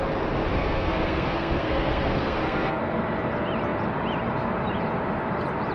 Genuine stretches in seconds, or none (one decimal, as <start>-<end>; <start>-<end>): 0.0-0.5; 2.8-5.7